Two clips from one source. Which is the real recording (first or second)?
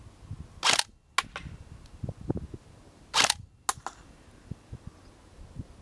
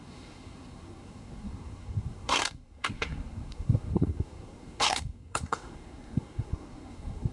first